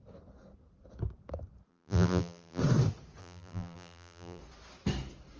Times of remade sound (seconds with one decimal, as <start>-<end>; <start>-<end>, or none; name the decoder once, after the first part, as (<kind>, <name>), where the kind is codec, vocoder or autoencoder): 1.7-2.6 (vocoder, BigVGAN v2); 3.2-4.4